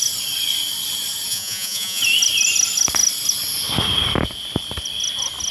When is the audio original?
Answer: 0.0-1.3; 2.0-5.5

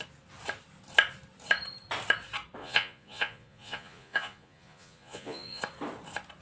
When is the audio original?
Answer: 0.0-2.6; 5.6-6.4

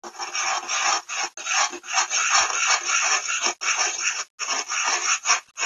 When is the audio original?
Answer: 0.0-5.7

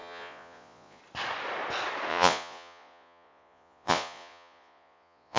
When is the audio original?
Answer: 1.0-2.1